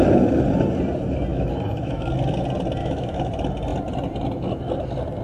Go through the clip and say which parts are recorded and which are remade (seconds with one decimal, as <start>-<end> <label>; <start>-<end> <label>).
0.0-1.3 recorded; 1.3-2.1 remade; 2.1-2.8 recorded; 2.8-3.3 remade; 3.3-5.2 recorded